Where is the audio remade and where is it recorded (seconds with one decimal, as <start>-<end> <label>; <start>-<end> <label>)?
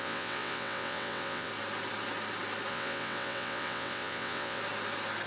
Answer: 0.0-1.5 remade; 1.5-2.7 recorded; 2.7-4.6 remade; 4.6-5.3 recorded